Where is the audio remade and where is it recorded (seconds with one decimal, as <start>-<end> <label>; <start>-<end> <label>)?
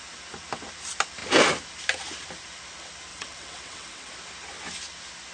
0.0-3.1 recorded; 3.1-4.1 remade; 4.1-5.3 recorded